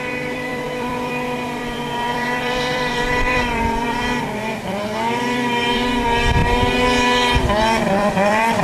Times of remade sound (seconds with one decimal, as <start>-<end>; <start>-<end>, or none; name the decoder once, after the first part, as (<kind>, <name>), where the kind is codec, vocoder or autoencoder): 0.0-6.4 (vocoder, BigVGAN v2); 7.9-8.6